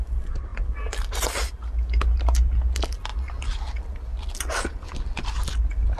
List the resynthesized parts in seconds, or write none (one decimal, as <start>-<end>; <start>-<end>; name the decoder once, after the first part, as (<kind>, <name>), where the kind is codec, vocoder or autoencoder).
none